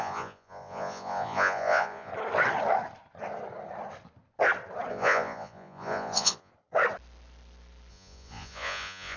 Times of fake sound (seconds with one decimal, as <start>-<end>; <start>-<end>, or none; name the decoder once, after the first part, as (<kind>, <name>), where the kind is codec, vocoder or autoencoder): 0.0-2.1 (vocoder, Vocos); 4.9-6.5; 7.9-9.2